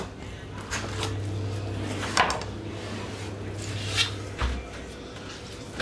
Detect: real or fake real